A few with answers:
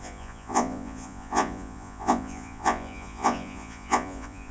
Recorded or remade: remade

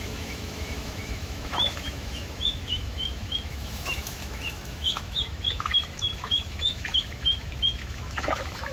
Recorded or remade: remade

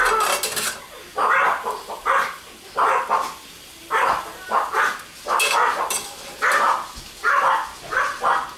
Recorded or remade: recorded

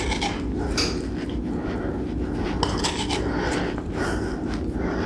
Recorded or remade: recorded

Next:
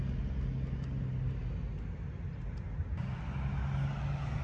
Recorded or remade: recorded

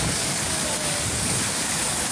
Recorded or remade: remade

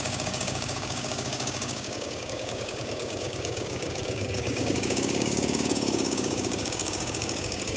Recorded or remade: remade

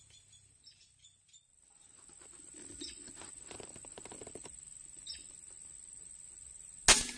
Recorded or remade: recorded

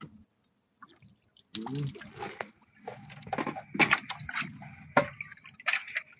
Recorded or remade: recorded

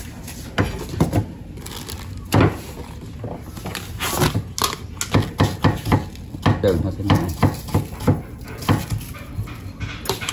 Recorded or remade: recorded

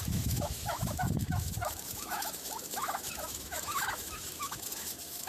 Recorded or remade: remade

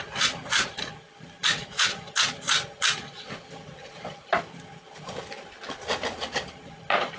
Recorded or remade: recorded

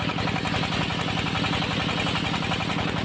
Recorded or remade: recorded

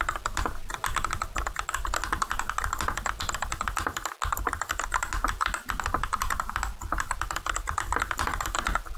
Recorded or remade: recorded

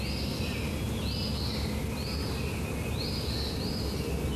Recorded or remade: recorded